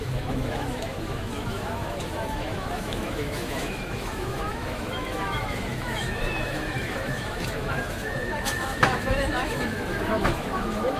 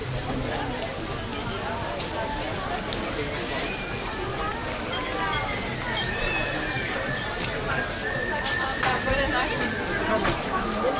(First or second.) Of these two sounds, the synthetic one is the first